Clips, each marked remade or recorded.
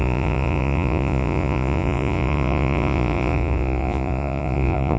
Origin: remade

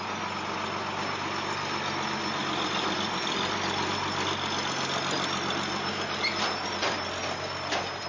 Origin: recorded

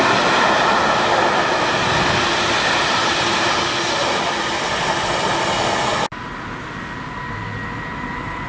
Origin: recorded